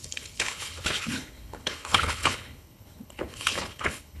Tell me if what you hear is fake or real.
fake